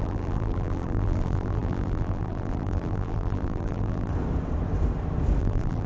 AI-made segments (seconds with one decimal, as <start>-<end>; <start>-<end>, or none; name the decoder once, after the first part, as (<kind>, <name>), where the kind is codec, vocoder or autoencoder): 0.0-4.1 (vocoder, BigVGAN v2); 5.4-5.9